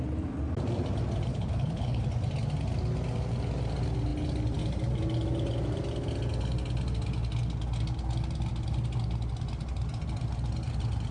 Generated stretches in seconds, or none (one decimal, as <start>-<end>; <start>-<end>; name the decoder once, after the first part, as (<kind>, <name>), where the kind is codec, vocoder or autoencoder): 1.3-2.0 (codec, HILCodec)